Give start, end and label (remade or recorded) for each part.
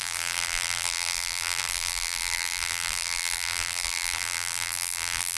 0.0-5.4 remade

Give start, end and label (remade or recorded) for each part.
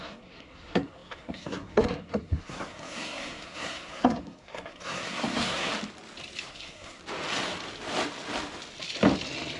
0.0-5.7 remade; 5.7-6.5 recorded; 6.5-7.0 remade; 7.0-9.6 recorded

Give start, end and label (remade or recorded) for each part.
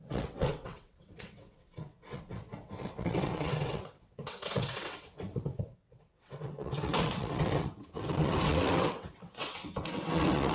0.0-10.5 remade